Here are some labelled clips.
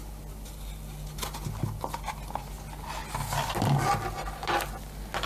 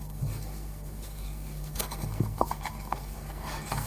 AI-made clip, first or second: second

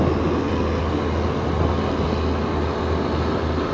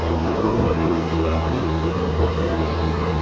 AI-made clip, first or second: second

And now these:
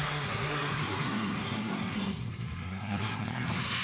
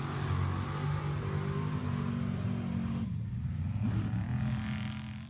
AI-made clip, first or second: first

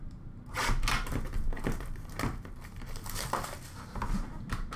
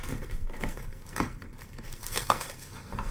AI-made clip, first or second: second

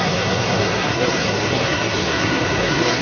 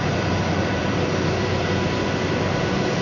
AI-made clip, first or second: first